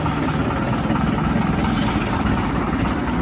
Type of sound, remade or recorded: recorded